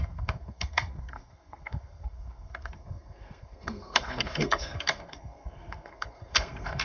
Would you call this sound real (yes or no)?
no